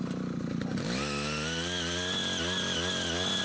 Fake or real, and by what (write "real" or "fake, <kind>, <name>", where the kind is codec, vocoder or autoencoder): real